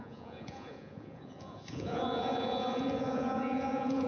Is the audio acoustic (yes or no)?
no